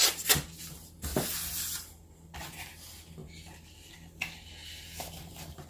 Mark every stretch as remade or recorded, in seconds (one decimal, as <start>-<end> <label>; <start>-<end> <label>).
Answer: 0.0-5.7 recorded